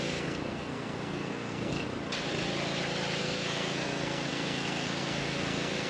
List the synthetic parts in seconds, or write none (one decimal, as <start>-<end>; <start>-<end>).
0.0-1.9; 3.2-5.9